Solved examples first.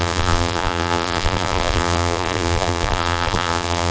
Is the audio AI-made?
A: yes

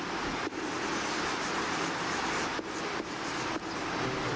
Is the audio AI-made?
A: no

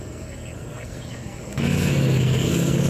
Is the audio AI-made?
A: yes